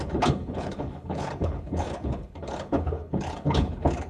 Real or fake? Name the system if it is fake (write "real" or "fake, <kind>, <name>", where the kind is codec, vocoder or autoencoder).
fake, codec, HILCodec